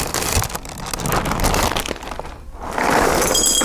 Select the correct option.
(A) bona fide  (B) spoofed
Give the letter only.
A